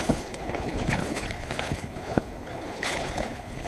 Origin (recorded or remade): remade